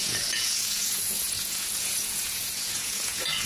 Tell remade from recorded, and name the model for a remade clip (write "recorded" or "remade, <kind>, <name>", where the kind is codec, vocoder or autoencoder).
remade, vocoder, Vocos